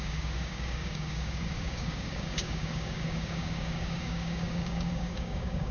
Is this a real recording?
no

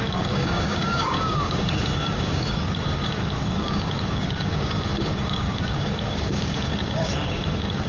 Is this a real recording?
no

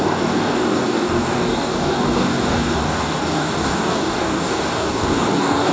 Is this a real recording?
no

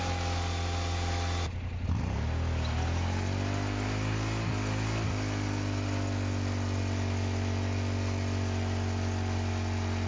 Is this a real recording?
yes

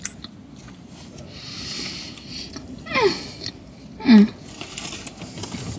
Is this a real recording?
yes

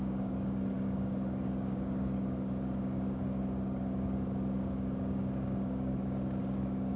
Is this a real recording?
no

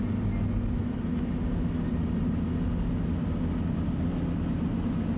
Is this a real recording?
yes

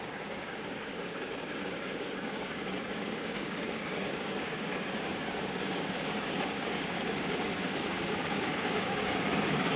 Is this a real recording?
no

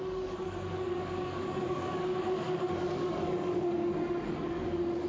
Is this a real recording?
no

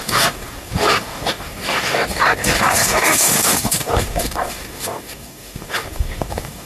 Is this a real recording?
no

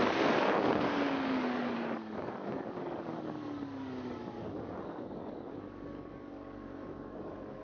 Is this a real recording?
no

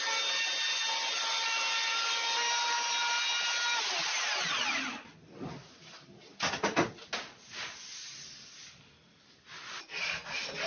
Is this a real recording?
yes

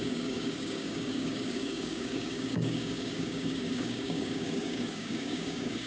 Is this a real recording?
no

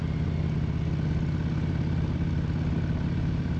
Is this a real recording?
yes